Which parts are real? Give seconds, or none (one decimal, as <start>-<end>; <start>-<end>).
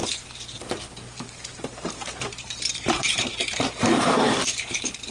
none